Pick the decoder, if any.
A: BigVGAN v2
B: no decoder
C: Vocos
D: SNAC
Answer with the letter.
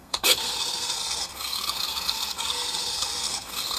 D